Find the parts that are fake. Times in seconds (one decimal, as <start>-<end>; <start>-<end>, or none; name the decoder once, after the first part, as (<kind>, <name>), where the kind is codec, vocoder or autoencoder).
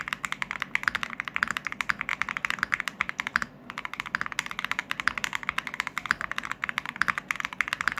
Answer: none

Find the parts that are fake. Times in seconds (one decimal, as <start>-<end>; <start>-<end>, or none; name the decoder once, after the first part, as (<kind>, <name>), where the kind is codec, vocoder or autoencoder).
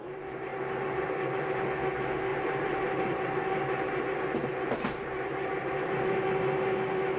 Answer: 2.3-3.5 (vocoder, BigVGAN v2); 4.4-5.5